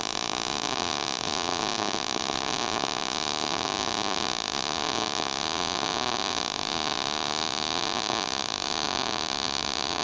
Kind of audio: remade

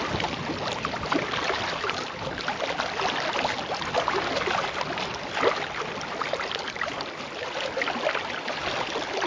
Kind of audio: recorded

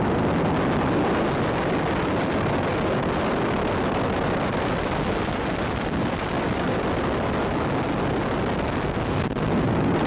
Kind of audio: recorded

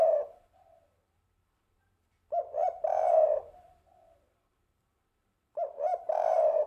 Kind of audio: remade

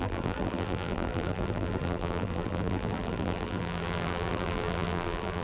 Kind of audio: remade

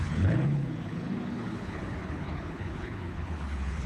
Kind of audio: remade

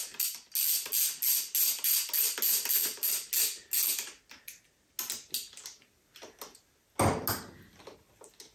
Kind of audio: recorded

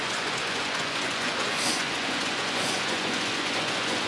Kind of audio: remade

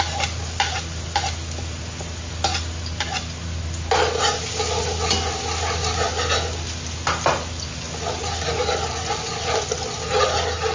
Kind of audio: recorded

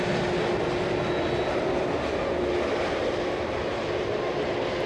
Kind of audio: recorded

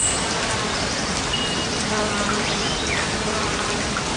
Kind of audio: recorded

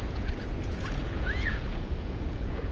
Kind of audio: remade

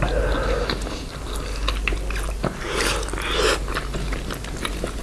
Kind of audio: recorded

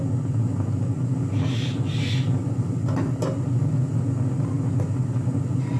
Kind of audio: recorded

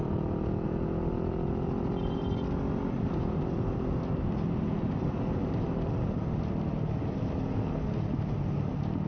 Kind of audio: recorded